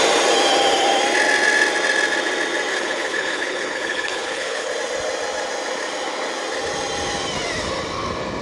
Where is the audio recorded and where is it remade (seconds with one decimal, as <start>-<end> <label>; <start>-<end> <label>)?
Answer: 0.0-2.7 recorded; 2.7-4.7 remade; 4.7-8.4 recorded